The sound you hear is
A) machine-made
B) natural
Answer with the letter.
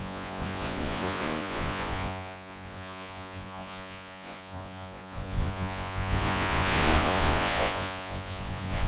A